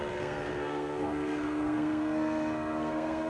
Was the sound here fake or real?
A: fake